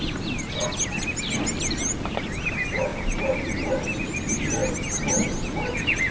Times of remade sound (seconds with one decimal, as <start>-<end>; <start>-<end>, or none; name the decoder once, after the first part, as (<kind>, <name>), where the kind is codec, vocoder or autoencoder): none